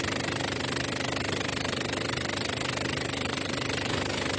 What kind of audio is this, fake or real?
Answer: real